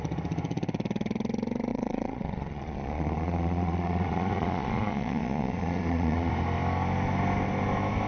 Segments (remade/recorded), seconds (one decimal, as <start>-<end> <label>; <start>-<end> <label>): 0.0-1.7 recorded; 1.7-6.3 remade; 6.3-8.1 recorded